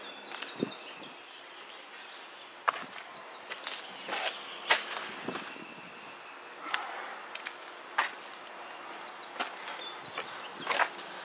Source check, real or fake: real